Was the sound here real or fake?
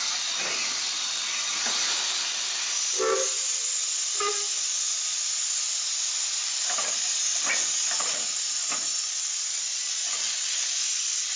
real